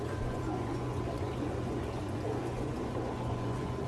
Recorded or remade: remade